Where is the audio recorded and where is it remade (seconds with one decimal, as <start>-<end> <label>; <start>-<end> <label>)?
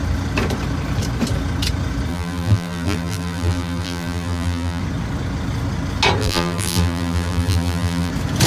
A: 0.0-2.1 recorded; 2.1-4.8 remade; 4.8-6.2 recorded; 6.2-8.1 remade; 8.1-8.5 recorded